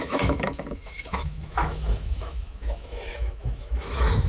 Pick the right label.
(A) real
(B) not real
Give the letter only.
B